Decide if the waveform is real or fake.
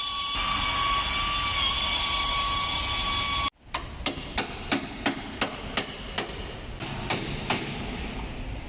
real